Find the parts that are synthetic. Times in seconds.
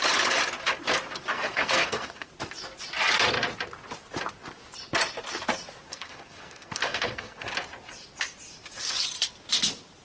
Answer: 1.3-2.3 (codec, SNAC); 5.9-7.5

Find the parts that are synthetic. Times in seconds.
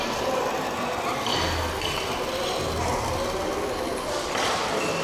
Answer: none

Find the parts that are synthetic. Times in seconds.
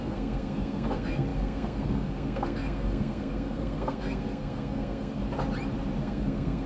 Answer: 0.0-5.2 (codec, SNAC); 6.0-6.7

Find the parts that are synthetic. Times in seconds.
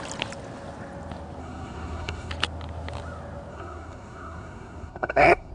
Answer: 1.4-2.3 (codec, SNAC); 3.5-5.5